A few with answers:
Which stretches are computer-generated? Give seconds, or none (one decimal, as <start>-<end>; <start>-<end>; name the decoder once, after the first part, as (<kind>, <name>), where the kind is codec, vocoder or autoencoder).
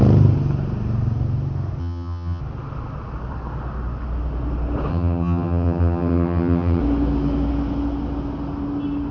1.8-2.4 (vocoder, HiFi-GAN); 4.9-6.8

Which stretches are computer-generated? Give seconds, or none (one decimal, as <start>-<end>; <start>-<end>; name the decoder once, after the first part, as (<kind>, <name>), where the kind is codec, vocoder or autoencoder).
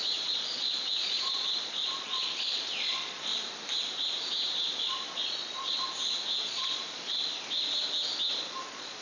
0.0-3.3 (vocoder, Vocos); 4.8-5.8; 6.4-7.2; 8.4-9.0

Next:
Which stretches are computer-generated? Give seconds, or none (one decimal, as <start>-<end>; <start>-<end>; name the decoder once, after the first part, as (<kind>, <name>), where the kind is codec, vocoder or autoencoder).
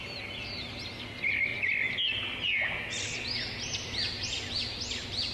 none